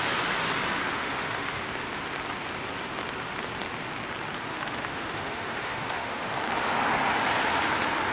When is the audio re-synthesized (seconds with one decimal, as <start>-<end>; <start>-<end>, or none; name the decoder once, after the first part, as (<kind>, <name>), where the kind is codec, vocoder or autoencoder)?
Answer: 0.9-1.6 (autoencoder, DAC-VAE); 4.5-6.3

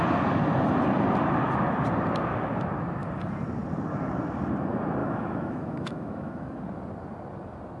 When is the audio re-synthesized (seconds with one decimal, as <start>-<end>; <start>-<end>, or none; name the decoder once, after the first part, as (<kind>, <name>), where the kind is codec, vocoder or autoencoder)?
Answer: 5.0-6.6 (autoencoder, DAC-VAE)

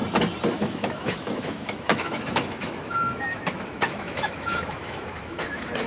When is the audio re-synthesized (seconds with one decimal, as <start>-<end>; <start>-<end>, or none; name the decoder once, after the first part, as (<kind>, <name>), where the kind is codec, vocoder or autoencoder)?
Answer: 0.5-5.9 (autoencoder, DAC-VAE)

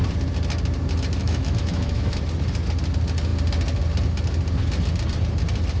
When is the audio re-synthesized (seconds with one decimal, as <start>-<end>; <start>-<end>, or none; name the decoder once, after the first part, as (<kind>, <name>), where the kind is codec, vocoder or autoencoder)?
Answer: 1.2-2.2 (autoencoder, DAC-VAE)